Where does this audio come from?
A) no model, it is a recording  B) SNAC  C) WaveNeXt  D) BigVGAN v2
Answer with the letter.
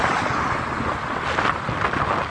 A